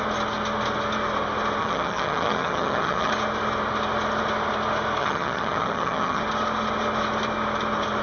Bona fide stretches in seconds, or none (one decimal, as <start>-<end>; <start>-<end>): 0.0-1.6; 3.1-5.0; 6.2-8.0